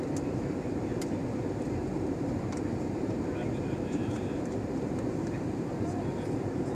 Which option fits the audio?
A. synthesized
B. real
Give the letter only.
A